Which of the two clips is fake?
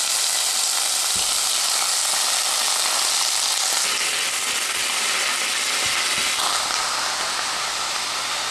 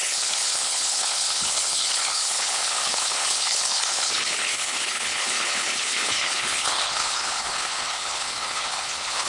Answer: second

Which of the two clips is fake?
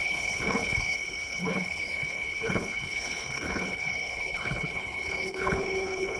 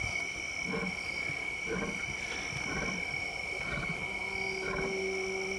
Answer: first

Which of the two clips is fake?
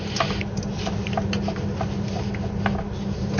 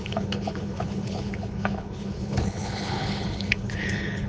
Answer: second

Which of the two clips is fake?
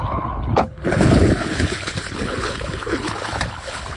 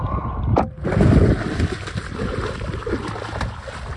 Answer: first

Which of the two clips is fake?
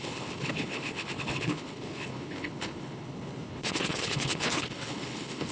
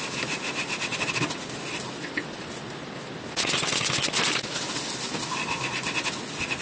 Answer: first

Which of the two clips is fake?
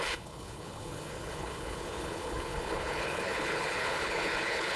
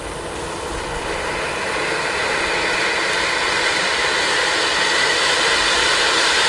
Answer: first